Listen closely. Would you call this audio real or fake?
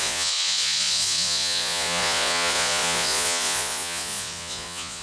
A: fake